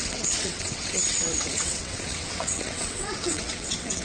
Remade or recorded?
remade